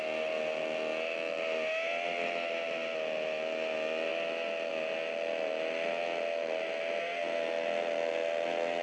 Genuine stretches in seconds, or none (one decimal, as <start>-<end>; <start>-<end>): 0.0-8.8